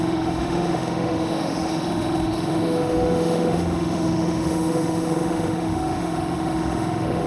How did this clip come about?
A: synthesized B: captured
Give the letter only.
A